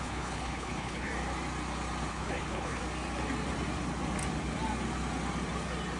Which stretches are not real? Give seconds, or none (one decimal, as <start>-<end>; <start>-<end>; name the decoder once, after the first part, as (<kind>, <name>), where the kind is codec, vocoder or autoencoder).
0.0-1.1 (codec, HILCodec); 2.1-2.8